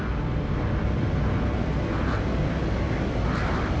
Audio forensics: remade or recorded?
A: recorded